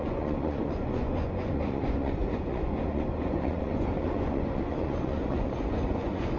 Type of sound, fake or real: fake